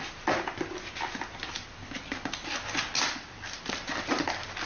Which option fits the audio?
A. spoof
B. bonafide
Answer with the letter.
B